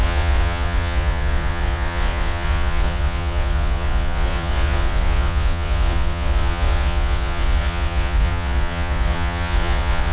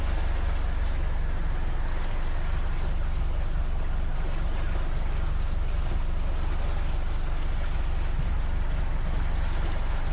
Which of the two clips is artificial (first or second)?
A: first